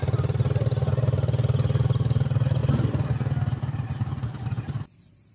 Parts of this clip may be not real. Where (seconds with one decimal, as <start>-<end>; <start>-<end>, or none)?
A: none